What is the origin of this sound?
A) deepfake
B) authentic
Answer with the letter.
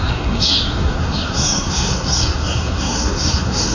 A